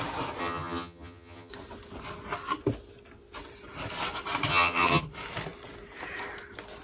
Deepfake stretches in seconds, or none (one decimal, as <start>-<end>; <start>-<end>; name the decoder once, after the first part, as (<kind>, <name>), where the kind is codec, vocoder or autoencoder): 0.4-1.5 (vocoder, HiFi-GAN); 4.5-5.0